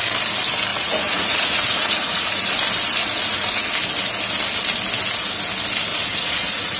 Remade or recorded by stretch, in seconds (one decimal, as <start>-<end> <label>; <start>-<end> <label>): 0.0-0.7 recorded; 0.7-2.4 remade; 2.4-3.0 recorded; 3.0-3.7 remade; 3.7-5.9 recorded; 5.9-6.8 remade

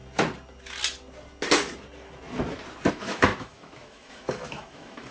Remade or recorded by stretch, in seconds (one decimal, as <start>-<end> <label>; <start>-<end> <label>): 0.0-2.9 recorded; 2.9-5.1 remade